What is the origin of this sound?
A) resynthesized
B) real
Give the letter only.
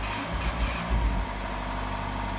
B